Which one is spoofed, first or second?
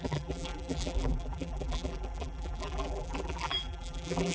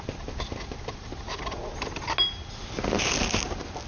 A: first